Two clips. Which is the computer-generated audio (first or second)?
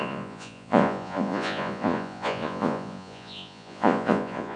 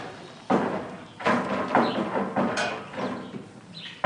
first